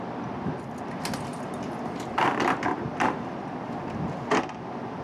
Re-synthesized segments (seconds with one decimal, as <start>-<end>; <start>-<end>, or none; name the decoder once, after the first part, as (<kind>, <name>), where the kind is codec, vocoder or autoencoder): none